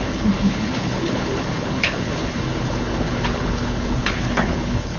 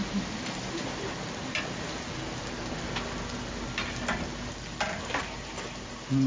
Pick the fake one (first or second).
first